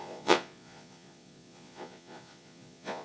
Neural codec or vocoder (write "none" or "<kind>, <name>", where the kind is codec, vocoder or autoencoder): vocoder, Vocos